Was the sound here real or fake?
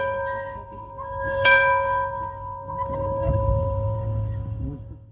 fake